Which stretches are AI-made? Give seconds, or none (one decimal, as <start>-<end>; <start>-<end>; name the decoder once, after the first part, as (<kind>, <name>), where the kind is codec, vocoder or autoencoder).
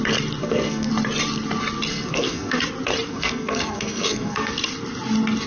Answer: 0.4-0.9 (codec, SNAC); 1.9-2.6; 3.1-4.5